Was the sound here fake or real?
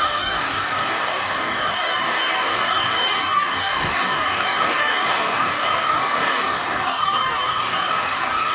fake